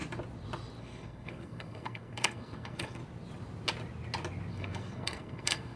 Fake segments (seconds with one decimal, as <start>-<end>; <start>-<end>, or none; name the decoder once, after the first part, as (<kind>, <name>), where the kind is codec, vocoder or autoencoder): 0.8-3.0 (codec, SNAC); 4.5-5.8